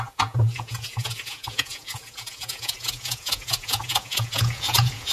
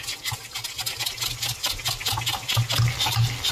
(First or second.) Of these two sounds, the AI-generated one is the first